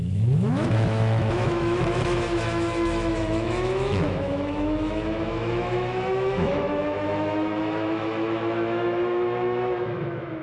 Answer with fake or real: fake